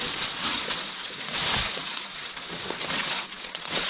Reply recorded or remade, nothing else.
remade